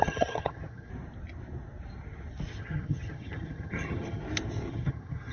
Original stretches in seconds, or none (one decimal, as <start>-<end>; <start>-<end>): 0.9-2.6; 4.2-4.7